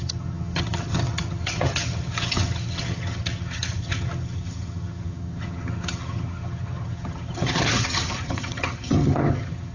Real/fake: fake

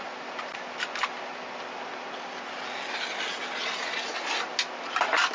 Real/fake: real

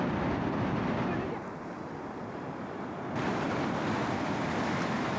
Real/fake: real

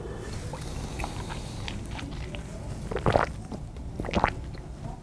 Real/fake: real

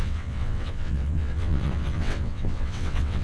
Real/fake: fake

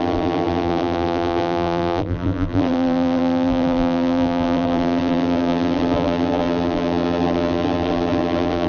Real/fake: fake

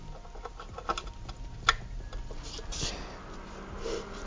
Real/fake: real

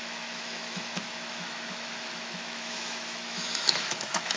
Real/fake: fake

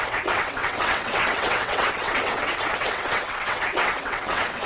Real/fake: fake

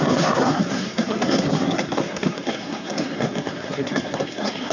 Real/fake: fake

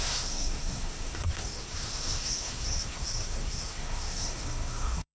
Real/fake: fake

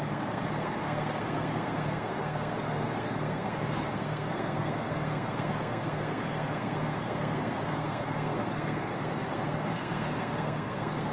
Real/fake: fake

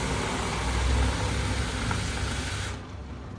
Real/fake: real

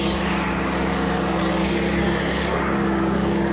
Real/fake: fake